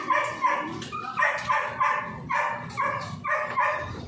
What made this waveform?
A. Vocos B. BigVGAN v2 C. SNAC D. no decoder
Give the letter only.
D